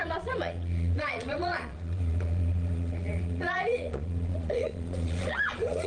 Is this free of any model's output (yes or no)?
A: no